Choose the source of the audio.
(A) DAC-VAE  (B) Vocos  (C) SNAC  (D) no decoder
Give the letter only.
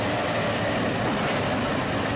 D